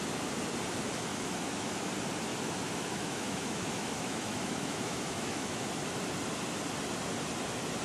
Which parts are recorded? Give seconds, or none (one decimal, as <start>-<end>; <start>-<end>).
0.0-1.1; 1.9-2.3; 5.7-7.8